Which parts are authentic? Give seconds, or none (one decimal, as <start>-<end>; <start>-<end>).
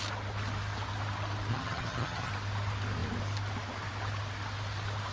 0.0-1.5; 2.3-5.1